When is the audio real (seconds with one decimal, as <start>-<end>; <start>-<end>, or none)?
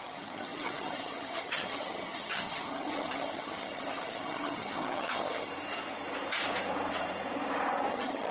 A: 5.5-7.9